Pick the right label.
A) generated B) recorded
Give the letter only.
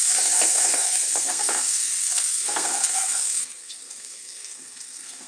A